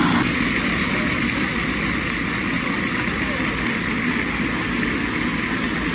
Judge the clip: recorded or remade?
recorded